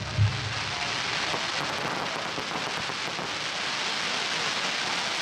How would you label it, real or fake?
real